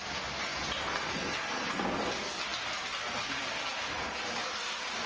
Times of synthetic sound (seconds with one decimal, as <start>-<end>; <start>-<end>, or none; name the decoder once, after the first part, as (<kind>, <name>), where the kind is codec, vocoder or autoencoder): 2.5-4.6 (vocoder, BigVGAN v2)